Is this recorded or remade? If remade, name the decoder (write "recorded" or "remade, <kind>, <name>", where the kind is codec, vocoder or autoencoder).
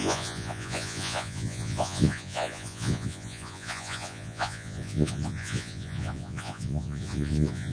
remade, vocoder, Vocos